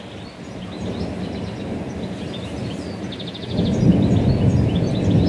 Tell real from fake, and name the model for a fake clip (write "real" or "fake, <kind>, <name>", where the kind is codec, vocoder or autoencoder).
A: real